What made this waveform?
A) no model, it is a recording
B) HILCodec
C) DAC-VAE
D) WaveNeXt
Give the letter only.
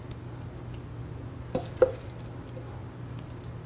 A